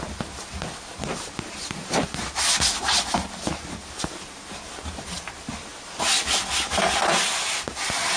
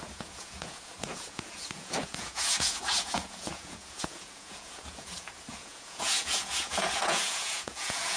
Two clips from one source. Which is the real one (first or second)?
first